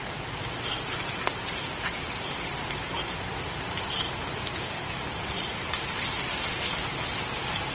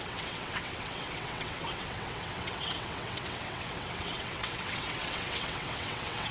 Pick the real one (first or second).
first